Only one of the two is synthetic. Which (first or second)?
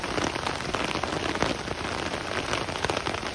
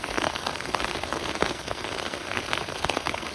second